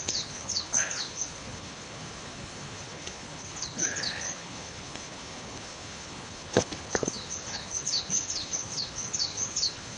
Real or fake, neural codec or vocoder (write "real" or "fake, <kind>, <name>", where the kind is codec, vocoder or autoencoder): fake, codec, HILCodec